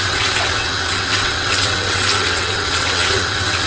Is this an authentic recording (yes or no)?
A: no